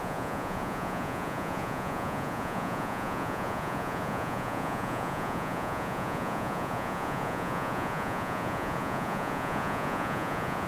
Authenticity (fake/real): fake